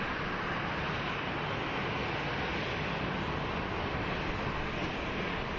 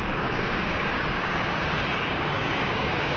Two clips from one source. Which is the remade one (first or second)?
second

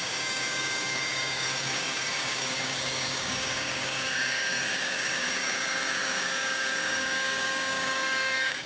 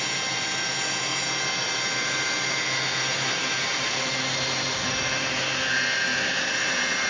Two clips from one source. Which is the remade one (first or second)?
first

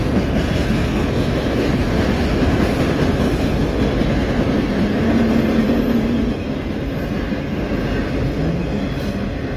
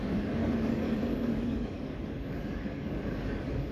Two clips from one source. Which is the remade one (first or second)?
second